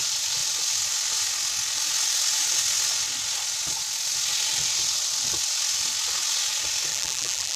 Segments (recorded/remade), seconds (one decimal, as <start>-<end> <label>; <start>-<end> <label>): 0.0-6.9 recorded; 6.9-7.6 remade